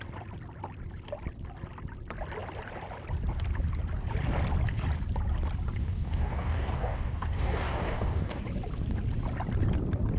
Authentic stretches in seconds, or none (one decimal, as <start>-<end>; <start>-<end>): 0.0-5.8; 8.4-10.2